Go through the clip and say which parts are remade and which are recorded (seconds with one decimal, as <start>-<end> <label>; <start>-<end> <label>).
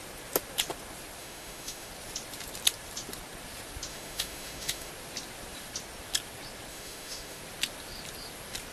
0.0-1.2 recorded; 1.2-1.9 remade; 1.9-3.9 recorded; 3.9-4.9 remade; 4.9-6.7 recorded; 6.7-7.4 remade; 7.4-8.7 recorded